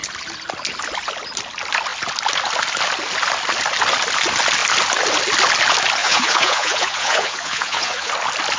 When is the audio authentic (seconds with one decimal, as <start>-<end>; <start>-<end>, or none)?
0.0-6.0; 8.1-8.6